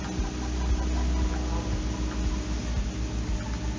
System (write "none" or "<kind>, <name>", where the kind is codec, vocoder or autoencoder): none